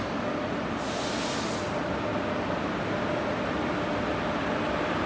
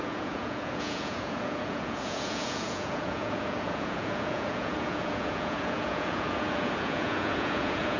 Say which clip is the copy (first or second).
second